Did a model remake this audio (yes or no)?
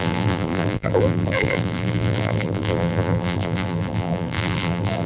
yes